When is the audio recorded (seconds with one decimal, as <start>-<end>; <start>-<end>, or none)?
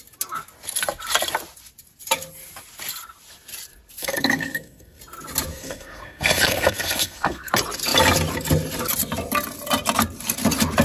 0.0-4.0; 5.0-5.5; 7.5-10.8